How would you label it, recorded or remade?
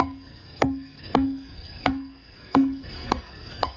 remade